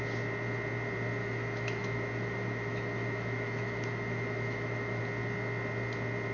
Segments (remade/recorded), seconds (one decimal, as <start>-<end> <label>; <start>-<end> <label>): 0.0-1.2 recorded; 1.2-5.0 remade; 5.0-6.3 recorded